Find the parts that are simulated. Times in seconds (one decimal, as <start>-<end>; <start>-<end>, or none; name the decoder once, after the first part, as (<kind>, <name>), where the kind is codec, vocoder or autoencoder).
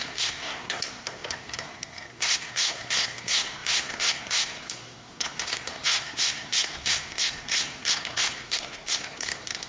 0.0-9.7 (codec, SNAC)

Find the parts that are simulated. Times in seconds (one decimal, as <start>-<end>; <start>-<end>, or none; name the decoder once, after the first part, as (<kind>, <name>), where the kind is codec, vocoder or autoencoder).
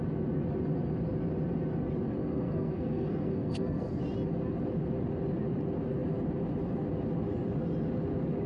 2.2-4.0 (codec, SNAC)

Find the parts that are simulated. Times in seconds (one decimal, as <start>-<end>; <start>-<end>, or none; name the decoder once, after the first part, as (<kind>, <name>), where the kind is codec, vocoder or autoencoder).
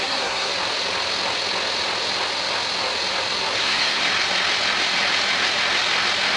0.0-0.5 (codec, SNAC); 3.6-4.0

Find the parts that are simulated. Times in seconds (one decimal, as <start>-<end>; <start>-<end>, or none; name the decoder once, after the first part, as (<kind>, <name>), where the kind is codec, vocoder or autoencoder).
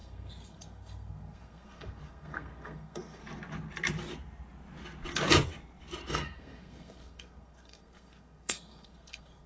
0.0-3.2 (codec, SNAC); 6.1-9.5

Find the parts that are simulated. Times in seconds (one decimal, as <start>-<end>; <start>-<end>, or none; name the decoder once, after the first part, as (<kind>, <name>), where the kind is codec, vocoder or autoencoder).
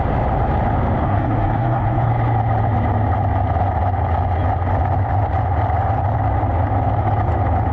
1.0-2.1 (codec, SNAC)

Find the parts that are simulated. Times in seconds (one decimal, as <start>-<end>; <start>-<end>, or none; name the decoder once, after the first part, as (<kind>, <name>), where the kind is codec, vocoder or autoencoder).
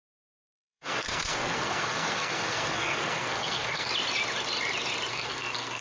0.0-3.9 (codec, SNAC); 5.1-5.8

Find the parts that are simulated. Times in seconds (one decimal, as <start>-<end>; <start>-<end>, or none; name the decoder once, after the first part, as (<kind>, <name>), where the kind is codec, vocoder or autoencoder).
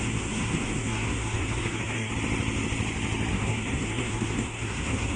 0.0-2.1 (codec, SNAC); 3.3-5.2